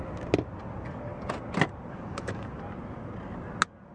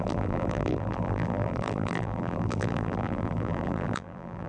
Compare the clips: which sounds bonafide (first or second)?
first